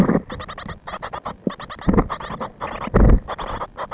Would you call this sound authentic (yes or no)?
yes